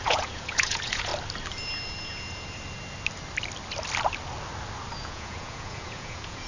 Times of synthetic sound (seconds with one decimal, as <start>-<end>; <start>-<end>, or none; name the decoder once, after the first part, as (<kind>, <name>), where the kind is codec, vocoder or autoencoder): 0.0-1.1 (vocoder, Vocos); 5.0-6.5